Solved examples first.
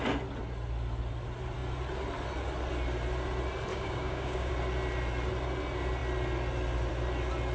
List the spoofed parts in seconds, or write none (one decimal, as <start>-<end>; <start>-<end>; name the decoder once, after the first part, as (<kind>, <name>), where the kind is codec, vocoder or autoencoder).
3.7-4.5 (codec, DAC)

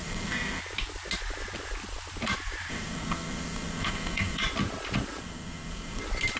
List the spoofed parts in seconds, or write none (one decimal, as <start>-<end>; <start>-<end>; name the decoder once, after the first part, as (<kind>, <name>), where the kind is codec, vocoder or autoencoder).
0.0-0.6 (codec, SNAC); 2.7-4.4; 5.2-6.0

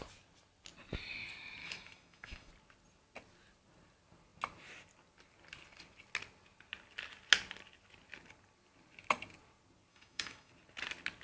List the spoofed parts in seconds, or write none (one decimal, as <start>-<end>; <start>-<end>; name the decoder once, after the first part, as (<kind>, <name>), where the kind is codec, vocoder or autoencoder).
1.6-2.5 (autoencoder, DAC-VAE); 9.9-10.5